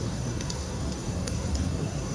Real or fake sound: fake